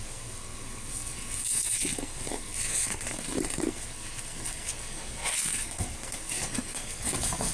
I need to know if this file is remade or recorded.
remade